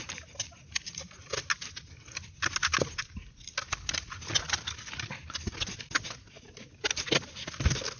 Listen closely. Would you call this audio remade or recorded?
recorded